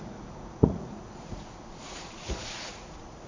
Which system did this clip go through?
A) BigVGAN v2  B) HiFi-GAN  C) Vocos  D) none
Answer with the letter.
C